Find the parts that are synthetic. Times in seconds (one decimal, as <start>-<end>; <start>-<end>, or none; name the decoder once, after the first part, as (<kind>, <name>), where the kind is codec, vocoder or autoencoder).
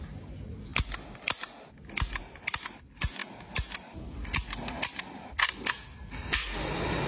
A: none